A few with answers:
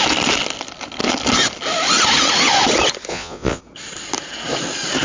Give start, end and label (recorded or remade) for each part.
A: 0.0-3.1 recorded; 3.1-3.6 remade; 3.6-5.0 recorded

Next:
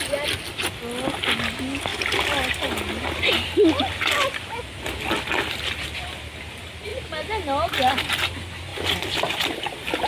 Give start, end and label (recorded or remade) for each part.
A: 0.0-8.7 recorded; 8.7-9.7 remade; 9.7-10.1 recorded

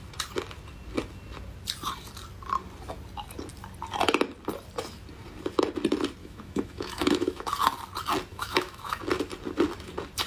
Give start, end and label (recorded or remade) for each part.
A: 0.0-6.2 recorded; 6.2-7.5 remade; 7.5-8.3 recorded; 8.3-9.0 remade; 9.0-10.3 recorded